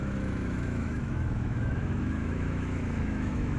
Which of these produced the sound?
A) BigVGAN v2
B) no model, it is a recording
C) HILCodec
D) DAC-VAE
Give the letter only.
D